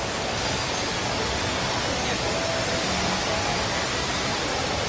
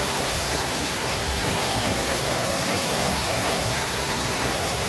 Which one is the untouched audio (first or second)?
first